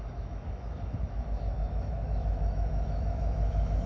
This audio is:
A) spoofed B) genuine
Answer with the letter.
A